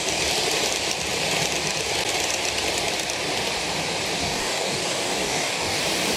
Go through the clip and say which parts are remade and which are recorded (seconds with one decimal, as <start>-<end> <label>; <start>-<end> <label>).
0.0-4.2 recorded; 4.2-5.8 remade; 5.8-6.2 recorded